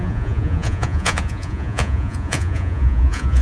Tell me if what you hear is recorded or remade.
remade